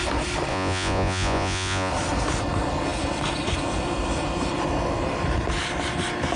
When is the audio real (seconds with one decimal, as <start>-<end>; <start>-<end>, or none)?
0.0-0.5; 1.9-6.4